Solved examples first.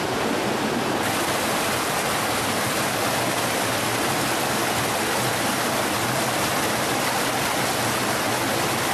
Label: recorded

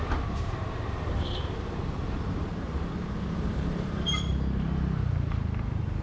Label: remade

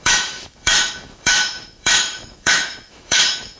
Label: remade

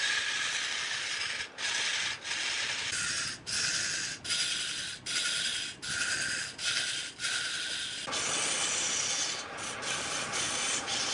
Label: recorded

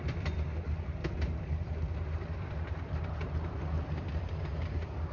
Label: remade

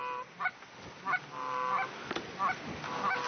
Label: recorded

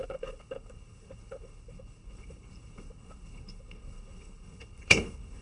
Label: remade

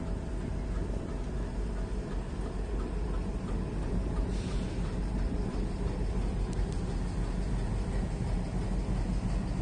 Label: recorded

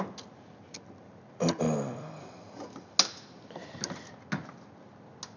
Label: recorded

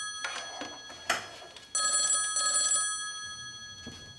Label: recorded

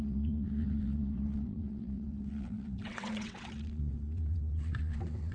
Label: remade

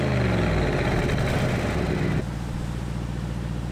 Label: recorded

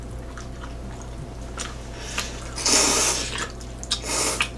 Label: recorded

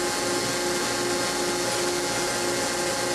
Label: recorded